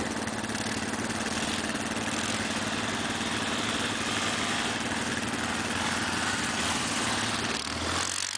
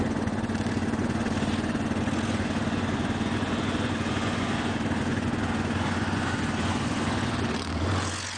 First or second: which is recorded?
first